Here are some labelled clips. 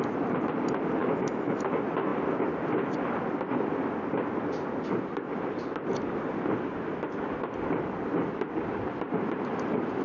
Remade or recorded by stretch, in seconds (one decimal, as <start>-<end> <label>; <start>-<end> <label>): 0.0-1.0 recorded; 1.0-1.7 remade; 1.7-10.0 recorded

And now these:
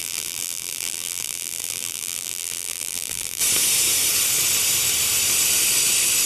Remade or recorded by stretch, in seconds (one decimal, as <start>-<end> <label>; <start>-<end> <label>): 0.0-3.4 remade; 3.4-6.3 recorded

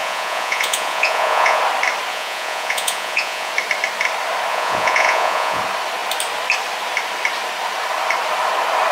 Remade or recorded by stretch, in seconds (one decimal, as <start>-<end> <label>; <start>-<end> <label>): 0.0-1.6 remade; 1.6-2.1 recorded; 2.1-3.5 remade; 3.5-4.5 recorded; 4.5-5.6 remade; 5.6-8.9 recorded